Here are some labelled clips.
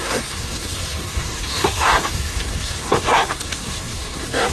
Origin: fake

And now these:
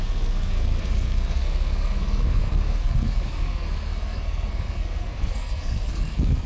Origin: fake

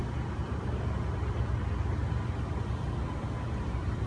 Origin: real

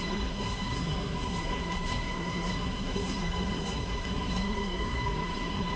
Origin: fake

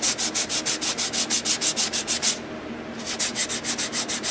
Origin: real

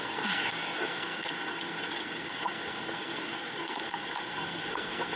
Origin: fake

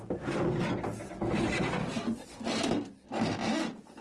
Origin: real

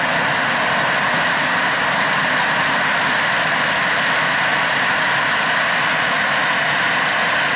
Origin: real